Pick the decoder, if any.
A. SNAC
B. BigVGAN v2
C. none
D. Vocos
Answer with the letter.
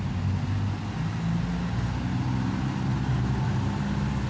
C